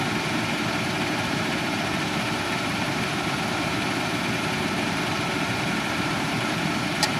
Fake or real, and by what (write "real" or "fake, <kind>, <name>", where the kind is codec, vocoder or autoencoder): fake, vocoder, BigVGAN v2